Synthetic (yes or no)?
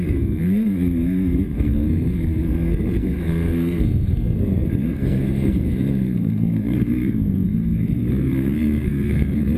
yes